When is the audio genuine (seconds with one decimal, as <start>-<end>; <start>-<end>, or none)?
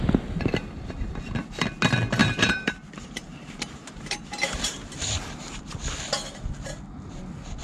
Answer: 0.0-2.2; 5.6-7.6